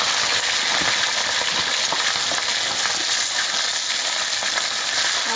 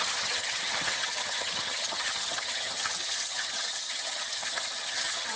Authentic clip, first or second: first